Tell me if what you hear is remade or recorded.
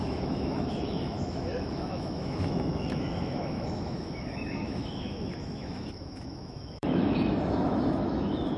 remade